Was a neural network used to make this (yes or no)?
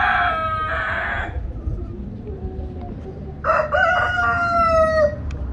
no